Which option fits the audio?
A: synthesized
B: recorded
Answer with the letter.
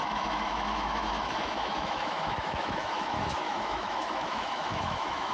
A